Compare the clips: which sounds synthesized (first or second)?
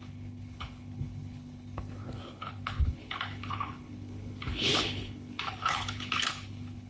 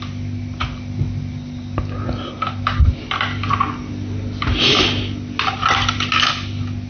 first